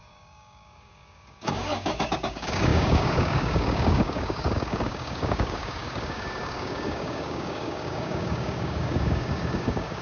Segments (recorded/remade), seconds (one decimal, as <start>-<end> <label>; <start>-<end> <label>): 0.0-10.0 remade

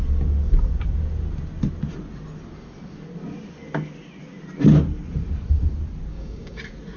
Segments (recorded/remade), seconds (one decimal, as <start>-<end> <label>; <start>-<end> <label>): 0.0-6.1 recorded; 6.1-6.6 remade; 6.6-7.0 recorded

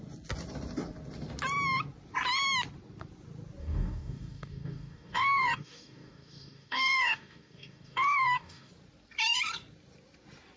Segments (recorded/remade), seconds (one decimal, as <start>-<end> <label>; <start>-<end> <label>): 0.0-3.6 recorded; 3.6-8.7 remade; 8.7-10.6 recorded